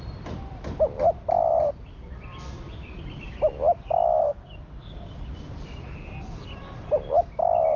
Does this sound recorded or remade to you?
remade